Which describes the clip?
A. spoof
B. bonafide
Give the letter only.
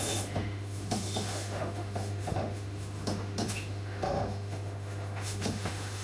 A